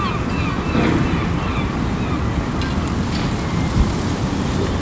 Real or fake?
real